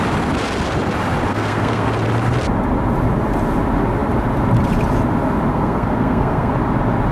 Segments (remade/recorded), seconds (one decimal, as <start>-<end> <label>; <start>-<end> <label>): 0.0-1.3 recorded; 1.3-1.9 remade; 1.9-5.5 recorded; 5.5-6.5 remade; 6.5-7.1 recorded